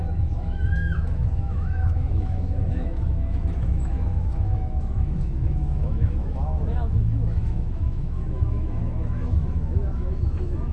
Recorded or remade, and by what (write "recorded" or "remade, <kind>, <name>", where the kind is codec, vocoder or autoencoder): remade, autoencoder, DAC-VAE